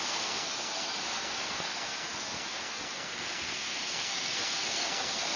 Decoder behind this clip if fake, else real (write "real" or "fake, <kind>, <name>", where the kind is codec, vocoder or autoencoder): fake, codec, SNAC